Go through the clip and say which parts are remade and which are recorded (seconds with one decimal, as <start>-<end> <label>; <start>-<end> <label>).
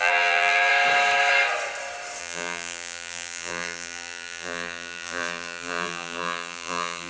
0.0-0.7 remade; 0.7-2.2 recorded; 2.2-7.1 remade